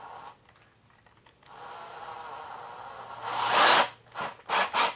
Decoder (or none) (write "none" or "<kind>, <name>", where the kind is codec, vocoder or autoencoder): none